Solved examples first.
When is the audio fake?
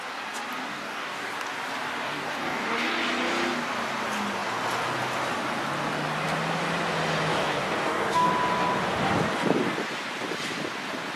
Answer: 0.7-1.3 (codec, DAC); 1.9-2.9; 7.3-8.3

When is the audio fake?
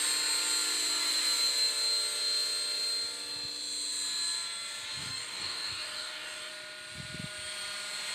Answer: 5.0-6.5 (codec, DAC)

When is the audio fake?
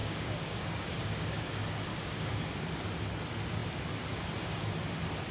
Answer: 0.0-1.4 (codec, DAC); 1.9-2.5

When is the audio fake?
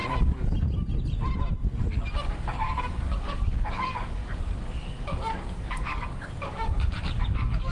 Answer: 2.3-7.7 (codec, DAC)